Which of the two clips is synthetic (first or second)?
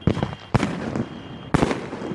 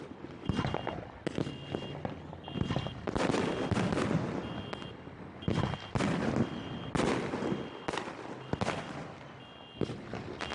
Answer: first